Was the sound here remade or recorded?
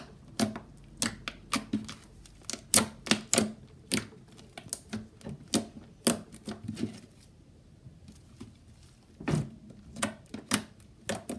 recorded